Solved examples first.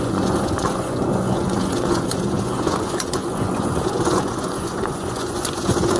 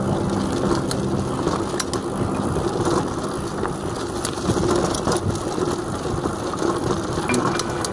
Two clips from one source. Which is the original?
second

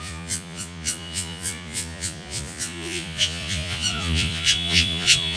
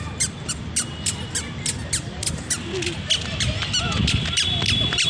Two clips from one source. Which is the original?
second